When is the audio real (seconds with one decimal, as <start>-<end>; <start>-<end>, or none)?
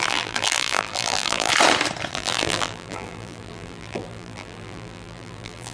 1.5-2.1